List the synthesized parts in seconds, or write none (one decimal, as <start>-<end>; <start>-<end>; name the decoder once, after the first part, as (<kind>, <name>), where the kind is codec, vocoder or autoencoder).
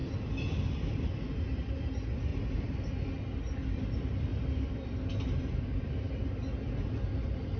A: 2.3-2.8 (vocoder, BigVGAN v2)